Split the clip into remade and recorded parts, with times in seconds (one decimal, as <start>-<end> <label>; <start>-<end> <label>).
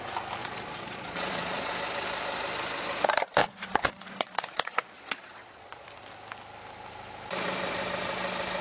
0.0-0.4 recorded; 0.4-1.7 remade; 1.7-3.4 recorded; 3.4-5.9 remade; 5.9-8.6 recorded